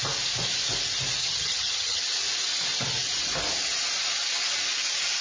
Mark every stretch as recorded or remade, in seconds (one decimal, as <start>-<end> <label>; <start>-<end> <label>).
0.0-1.2 recorded; 1.2-2.0 remade; 2.0-5.2 recorded